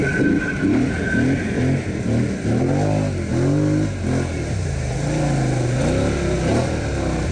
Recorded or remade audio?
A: recorded